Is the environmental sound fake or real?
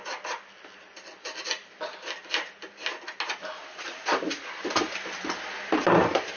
real